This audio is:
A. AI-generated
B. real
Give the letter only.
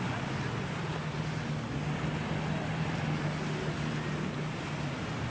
B